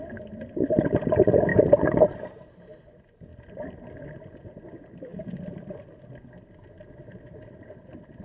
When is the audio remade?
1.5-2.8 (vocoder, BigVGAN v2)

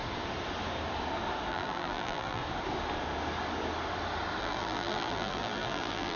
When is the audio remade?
1.5-2.4 (vocoder, BigVGAN v2); 4.4-6.2

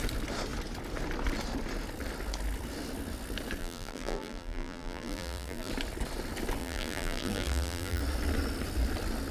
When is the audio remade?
3.6-5.7 (vocoder, BigVGAN v2); 6.6-8.0

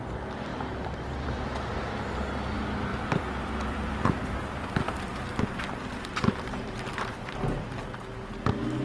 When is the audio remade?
0.5-1.5 (vocoder, BigVGAN v2); 2.9-7.8

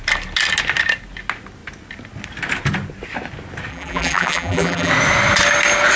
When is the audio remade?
3.7-4.9 (vocoder, BigVGAN v2)